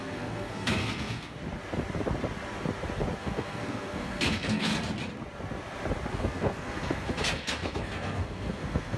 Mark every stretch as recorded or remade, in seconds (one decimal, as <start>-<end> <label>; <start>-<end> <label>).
0.0-1.4 remade; 1.4-3.2 recorded; 3.2-4.7 remade; 4.7-6.1 recorded; 6.1-9.0 remade